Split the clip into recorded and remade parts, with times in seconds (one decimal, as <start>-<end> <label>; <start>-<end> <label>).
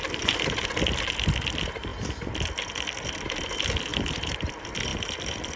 0.0-1.9 remade; 1.9-2.7 recorded; 2.7-5.6 remade